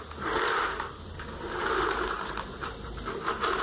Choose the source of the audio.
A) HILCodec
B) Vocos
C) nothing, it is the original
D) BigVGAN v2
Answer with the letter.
D